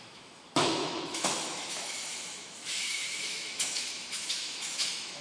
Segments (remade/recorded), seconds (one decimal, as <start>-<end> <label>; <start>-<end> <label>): 0.0-5.2 remade